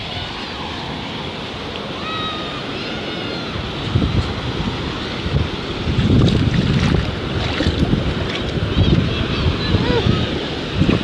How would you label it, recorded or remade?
recorded